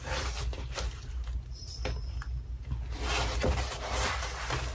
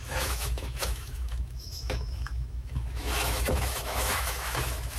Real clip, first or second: first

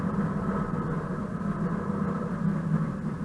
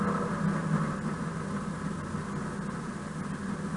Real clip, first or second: second